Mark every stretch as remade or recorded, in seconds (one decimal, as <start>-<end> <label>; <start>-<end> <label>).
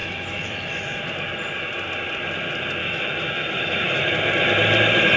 0.0-1.0 remade; 1.0-2.8 recorded; 2.8-4.1 remade; 4.1-5.2 recorded